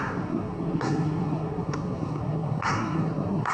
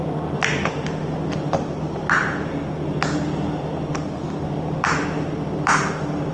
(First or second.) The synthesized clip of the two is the first